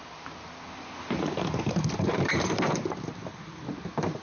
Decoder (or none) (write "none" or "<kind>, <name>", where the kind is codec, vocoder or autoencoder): none